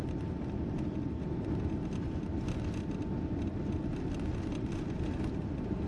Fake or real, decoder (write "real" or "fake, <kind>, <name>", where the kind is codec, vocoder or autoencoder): real